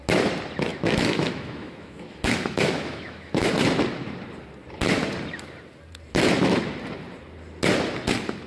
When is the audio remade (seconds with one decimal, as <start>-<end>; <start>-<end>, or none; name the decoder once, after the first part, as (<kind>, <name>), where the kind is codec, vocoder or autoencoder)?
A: 0.7-3.5 (autoencoder, DAC-VAE)